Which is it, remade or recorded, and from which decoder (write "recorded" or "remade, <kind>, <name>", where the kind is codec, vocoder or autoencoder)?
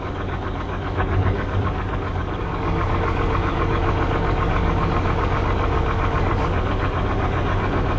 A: remade, codec, DAC